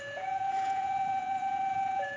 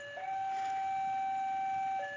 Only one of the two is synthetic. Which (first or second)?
first